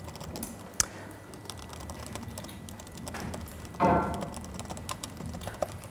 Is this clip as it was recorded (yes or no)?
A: yes